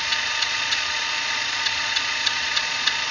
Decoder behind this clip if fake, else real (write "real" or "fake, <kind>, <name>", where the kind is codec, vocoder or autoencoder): fake, vocoder, Vocos